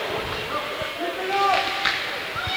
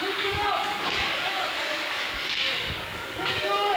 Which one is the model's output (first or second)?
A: second